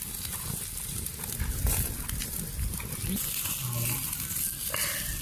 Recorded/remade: recorded